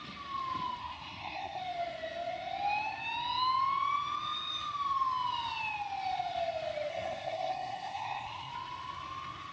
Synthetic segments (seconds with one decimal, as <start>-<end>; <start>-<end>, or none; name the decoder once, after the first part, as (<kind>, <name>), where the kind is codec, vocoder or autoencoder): 0.8-1.6 (codec, SNAC); 6.9-8.5